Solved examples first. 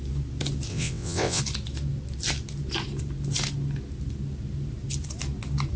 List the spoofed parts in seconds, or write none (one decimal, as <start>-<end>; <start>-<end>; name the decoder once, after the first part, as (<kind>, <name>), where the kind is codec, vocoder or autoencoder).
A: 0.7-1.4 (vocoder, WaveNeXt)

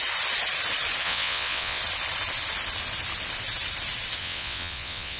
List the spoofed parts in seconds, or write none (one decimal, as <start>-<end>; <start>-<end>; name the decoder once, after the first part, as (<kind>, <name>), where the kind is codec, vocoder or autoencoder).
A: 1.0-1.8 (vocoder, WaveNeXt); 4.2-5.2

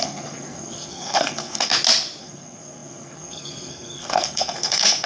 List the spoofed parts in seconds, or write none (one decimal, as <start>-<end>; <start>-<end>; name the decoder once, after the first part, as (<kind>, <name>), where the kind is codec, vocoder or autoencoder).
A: 0.0-1.7 (codec, SNAC); 2.2-5.1